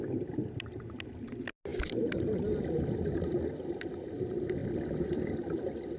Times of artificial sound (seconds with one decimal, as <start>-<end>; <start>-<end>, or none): none